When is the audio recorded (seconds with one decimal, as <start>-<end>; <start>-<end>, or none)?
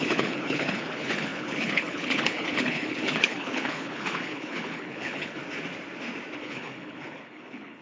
5.4-6.4